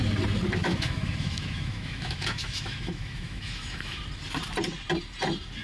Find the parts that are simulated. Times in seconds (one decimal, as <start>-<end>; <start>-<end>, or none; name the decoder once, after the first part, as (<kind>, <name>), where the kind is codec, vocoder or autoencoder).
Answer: 0.6-4.0 (autoencoder, DAC-VAE)